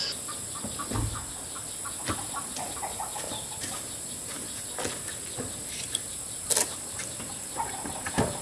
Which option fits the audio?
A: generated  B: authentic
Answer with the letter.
B